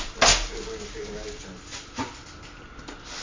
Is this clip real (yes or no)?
yes